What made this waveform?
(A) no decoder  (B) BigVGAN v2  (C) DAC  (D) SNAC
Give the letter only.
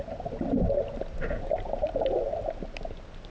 A